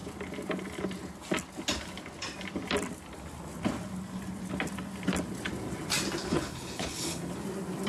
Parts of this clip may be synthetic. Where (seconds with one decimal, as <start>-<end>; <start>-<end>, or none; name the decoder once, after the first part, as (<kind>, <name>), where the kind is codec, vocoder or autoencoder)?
6.2-7.3 (codec, HILCodec)